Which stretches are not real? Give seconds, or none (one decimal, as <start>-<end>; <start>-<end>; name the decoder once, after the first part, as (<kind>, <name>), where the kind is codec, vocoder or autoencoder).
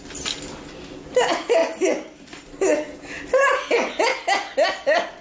none